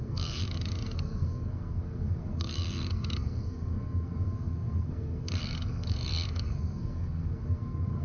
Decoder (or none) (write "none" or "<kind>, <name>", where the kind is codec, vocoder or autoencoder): codec, SNAC